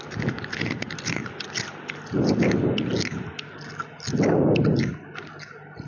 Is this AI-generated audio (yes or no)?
no